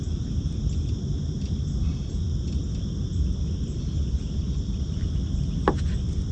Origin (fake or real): real